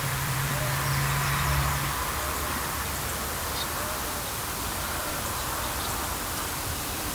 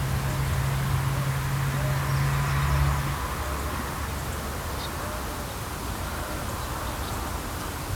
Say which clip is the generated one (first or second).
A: first